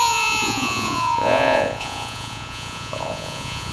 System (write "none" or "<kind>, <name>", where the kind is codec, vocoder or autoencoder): vocoder, Vocos